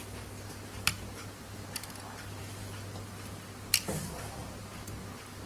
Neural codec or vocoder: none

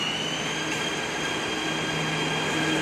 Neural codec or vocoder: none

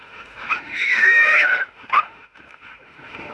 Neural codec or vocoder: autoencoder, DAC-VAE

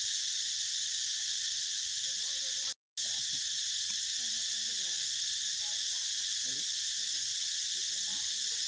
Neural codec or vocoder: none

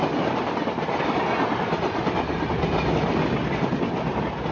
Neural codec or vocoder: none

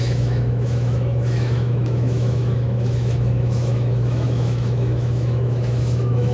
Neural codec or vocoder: autoencoder, DAC-VAE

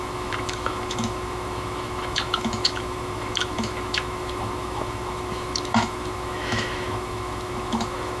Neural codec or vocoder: autoencoder, DAC-VAE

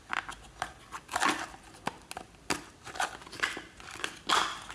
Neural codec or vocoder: none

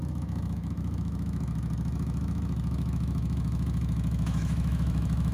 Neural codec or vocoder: autoencoder, DAC-VAE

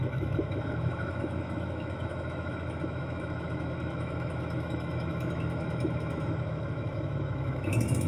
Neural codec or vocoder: autoencoder, DAC-VAE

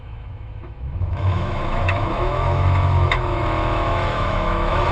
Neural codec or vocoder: autoencoder, DAC-VAE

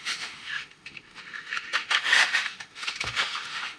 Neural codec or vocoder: autoencoder, DAC-VAE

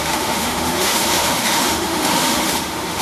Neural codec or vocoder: autoencoder, DAC-VAE